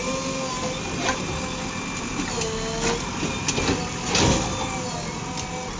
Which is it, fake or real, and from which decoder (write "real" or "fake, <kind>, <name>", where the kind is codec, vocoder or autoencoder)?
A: real